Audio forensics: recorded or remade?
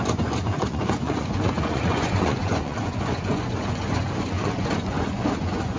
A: remade